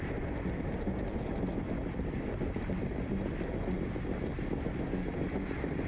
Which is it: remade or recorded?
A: recorded